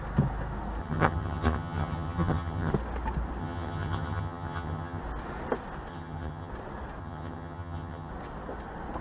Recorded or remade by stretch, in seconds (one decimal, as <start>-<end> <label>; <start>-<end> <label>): 0.0-0.8 recorded; 0.8-2.7 remade; 2.7-3.4 recorded; 3.4-5.0 remade; 5.0-5.9 recorded; 5.9-6.5 remade; 6.5-7.0 recorded; 7.0-8.1 remade; 8.1-9.0 recorded